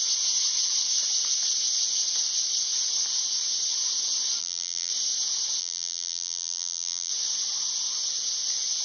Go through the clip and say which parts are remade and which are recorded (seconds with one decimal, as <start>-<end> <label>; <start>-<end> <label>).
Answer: 0.0-4.4 recorded; 4.4-4.9 remade; 4.9-5.6 recorded; 5.6-7.1 remade; 7.1-8.8 recorded